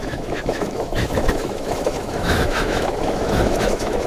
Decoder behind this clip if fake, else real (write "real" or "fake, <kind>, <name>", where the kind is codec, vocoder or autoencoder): fake, autoencoder, DAC-VAE